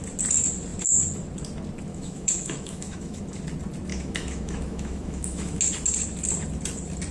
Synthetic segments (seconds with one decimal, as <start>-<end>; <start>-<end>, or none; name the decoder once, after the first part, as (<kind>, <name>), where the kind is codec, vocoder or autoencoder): 1.9-3.2 (autoencoder, DAC-VAE); 3.9-5.6

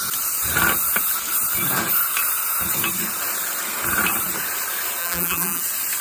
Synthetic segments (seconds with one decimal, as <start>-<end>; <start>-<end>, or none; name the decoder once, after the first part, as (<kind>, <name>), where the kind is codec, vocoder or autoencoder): 5.0-5.6 (vocoder, BigVGAN v2)

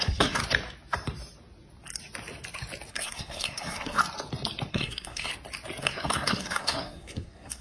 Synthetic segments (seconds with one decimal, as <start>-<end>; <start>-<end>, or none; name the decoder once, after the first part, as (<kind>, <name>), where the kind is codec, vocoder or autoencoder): 0.0-0.4 (codec, SNAC); 2.9-4.0; 4.7-5.3; 5.8-7.6

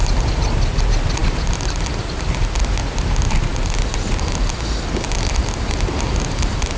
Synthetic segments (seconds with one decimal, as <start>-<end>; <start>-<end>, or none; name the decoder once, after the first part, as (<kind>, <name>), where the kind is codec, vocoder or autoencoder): none

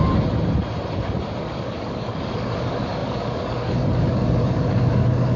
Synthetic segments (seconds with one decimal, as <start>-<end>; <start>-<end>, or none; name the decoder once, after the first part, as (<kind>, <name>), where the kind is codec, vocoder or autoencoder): 1.4-5.4 (codec, DAC)